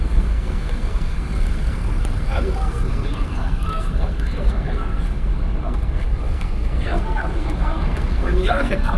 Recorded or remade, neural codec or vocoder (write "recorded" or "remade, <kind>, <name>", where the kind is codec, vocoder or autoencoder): remade, codec, SNAC